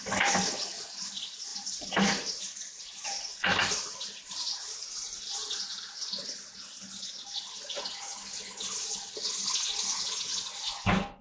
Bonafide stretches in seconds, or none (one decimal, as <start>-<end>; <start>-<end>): 0.0-1.5; 5.9-11.2